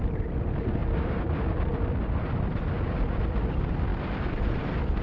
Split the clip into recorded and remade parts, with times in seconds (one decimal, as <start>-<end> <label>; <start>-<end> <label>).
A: 0.0-5.0 recorded